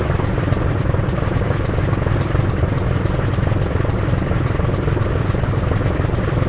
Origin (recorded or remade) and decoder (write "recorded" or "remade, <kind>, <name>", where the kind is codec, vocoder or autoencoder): recorded